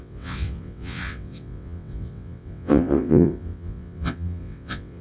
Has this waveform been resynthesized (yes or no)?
yes